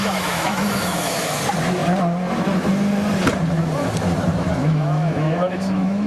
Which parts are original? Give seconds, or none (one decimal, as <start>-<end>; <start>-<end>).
1.4-4.6